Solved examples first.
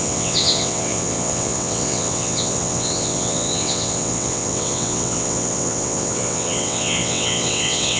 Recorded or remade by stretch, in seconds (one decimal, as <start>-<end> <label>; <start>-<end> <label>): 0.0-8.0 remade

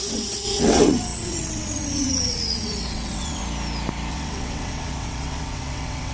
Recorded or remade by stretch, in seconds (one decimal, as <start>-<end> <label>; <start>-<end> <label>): 0.0-3.4 remade; 3.4-4.1 recorded; 4.1-6.1 remade

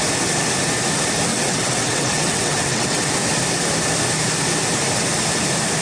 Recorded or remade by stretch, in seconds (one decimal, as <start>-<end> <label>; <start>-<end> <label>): 0.0-1.3 recorded; 1.3-3.1 remade; 3.1-5.8 recorded

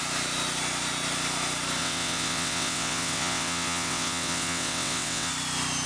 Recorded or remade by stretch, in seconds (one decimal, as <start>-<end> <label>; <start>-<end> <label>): 0.0-1.8 recorded; 1.8-5.3 remade; 5.3-5.9 recorded

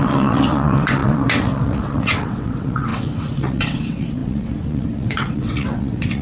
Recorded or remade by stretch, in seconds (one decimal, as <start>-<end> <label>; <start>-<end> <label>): 0.0-6.2 remade

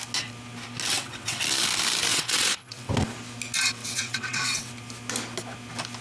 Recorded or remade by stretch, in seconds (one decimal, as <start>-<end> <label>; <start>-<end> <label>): 0.0-0.9 recorded; 0.9-1.4 remade; 1.4-2.1 recorded; 2.1-2.9 remade; 2.9-3.8 recorded; 3.8-4.7 remade; 4.7-6.0 recorded

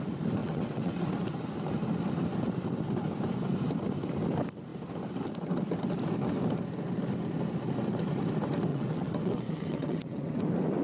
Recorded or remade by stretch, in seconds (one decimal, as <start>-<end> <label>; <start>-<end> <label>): 0.0-0.4 recorded; 0.4-1.1 remade; 1.1-8.7 recorded; 8.7-10.4 remade; 10.4-10.8 recorded

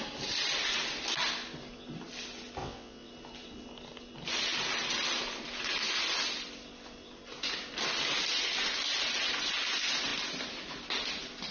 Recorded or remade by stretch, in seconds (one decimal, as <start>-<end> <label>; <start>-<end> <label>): 0.0-2.6 recorded; 2.6-3.1 remade; 3.1-11.5 recorded